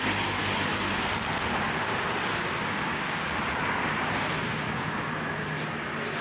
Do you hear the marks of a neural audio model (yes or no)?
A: no